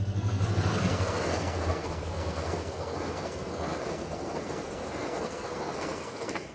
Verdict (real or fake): fake